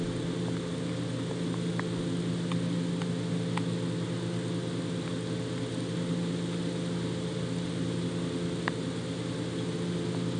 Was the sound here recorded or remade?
recorded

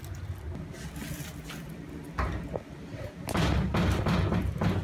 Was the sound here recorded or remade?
recorded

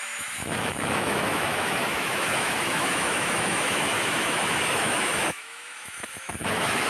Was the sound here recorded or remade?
remade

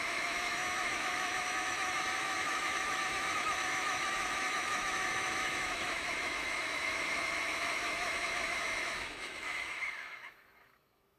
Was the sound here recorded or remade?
remade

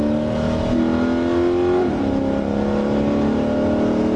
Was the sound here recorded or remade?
recorded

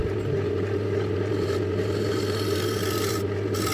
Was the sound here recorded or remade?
recorded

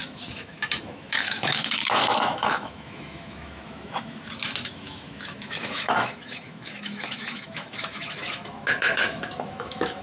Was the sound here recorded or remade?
remade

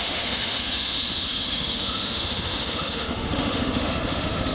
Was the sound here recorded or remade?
remade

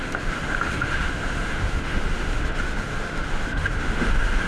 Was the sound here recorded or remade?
remade